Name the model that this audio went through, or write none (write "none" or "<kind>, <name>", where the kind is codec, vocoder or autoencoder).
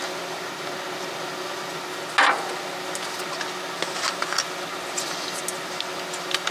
none